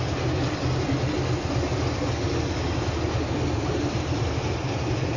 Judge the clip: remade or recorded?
recorded